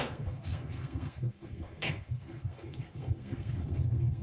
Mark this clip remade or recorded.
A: remade